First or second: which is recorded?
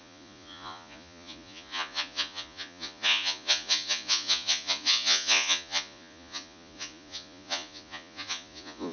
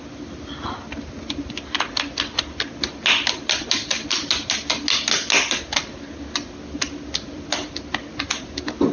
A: second